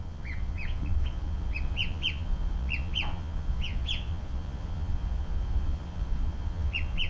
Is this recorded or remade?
remade